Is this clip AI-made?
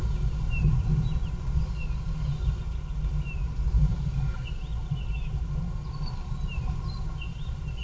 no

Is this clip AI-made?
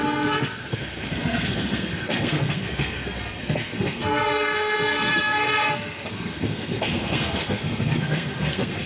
yes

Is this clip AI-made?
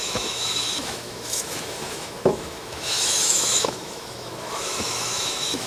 yes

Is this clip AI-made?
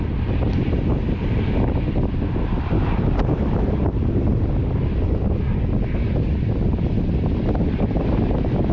no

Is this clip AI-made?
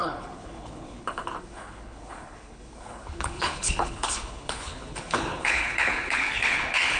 yes